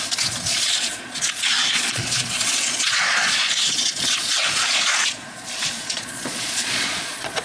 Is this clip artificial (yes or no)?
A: yes